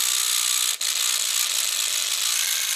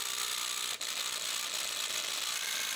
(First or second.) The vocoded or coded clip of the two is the second